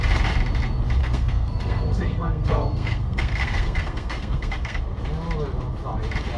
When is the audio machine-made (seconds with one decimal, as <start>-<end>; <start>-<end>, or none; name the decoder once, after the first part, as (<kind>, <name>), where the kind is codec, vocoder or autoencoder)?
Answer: 1.0-4.8 (codec, SNAC)

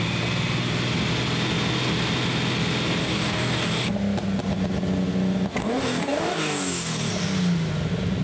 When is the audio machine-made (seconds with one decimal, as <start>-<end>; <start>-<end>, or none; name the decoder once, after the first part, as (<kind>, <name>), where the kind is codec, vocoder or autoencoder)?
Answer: 3.0-3.9 (codec, DAC); 5.6-7.1

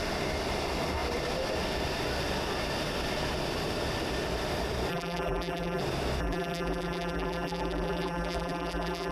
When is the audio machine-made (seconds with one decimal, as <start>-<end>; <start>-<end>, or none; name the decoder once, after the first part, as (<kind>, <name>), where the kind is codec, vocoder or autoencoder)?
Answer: 4.9-5.8 (vocoder, BigVGAN v2); 6.2-9.1

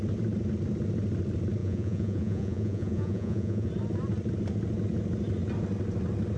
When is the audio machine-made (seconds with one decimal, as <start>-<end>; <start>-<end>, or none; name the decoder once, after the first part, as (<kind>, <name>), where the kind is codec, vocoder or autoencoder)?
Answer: 1.6-3.7 (vocoder, Vocos)

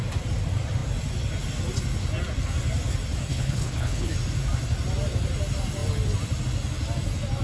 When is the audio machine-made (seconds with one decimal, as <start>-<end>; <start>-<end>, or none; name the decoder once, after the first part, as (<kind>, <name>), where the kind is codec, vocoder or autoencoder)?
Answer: 3.3-4.1 (codec, HILCodec)

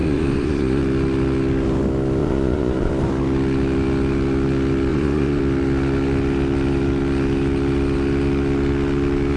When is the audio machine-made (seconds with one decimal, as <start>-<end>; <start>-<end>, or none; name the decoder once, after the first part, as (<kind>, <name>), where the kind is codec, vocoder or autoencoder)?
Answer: 0.0-0.8 (vocoder, Vocos); 2.2-2.9; 4.9-5.4

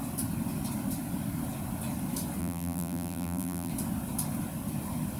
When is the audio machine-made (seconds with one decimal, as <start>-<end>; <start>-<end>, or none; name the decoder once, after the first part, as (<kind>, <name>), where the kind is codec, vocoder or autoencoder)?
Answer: 2.4-3.7 (vocoder, BigVGAN v2)